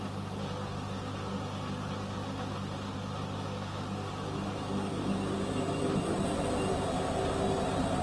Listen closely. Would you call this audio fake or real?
real